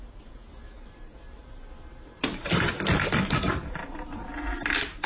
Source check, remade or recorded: recorded